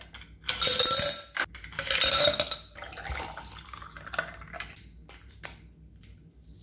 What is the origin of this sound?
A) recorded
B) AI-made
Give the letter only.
A